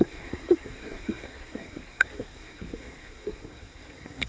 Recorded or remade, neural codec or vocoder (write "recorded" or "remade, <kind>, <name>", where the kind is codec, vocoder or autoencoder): remade, codec, SNAC